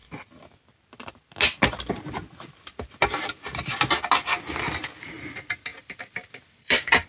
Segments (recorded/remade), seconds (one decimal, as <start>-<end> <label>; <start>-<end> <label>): 0.0-5.7 recorded; 5.7-7.1 remade